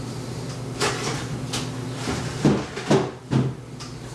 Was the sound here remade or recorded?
recorded